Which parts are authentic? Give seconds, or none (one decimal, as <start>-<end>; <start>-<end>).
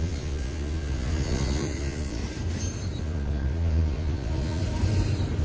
2.2-3.0; 4.6-5.4